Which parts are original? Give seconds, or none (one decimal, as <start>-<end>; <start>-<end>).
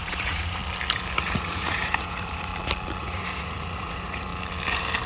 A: 0.6-1.2; 2.5-3.0; 4.3-5.1